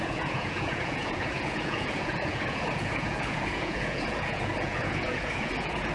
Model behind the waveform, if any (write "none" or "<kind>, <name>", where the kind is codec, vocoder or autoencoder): vocoder, Vocos